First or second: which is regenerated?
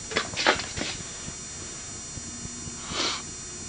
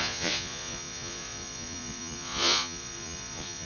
second